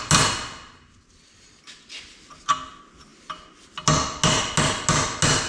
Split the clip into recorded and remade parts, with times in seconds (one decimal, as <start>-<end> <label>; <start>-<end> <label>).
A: 0.0-5.5 recorded